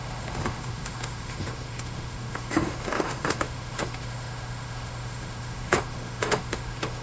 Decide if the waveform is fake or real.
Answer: fake